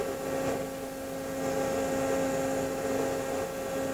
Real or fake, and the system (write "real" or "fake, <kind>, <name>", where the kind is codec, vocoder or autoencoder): real